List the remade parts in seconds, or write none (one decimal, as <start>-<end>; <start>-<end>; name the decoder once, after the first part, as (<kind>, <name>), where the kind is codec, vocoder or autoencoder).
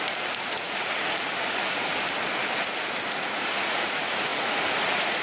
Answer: 0.0-1.9 (vocoder, Vocos); 3.1-5.2